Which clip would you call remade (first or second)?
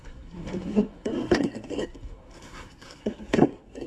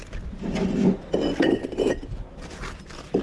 first